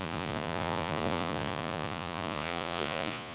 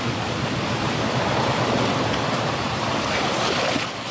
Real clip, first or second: second